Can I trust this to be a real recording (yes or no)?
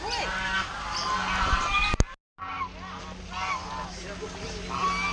yes